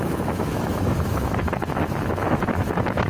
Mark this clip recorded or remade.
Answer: remade